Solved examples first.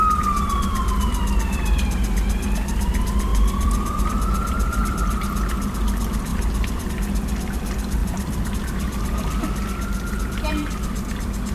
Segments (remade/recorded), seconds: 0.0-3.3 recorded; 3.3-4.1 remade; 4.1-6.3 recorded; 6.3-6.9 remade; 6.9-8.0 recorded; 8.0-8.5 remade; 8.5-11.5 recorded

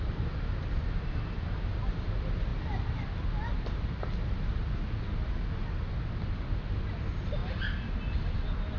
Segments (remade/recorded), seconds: 0.0-8.8 recorded

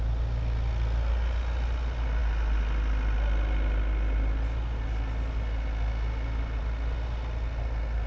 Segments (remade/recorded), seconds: 0.0-8.1 recorded

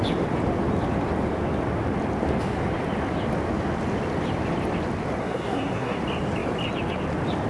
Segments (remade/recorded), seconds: 0.0-5.2 recorded; 5.2-6.0 remade; 6.0-7.5 recorded